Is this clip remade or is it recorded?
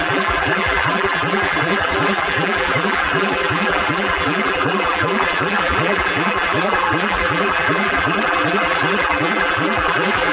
remade